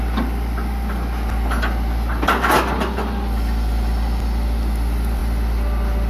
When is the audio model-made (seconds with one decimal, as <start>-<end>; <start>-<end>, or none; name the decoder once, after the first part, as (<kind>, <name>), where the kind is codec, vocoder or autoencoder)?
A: none